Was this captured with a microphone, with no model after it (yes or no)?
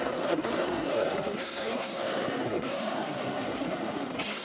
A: no